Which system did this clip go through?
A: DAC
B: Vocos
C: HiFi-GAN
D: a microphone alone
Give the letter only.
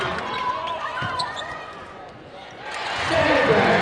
B